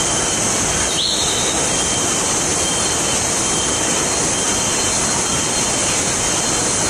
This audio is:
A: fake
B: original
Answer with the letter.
B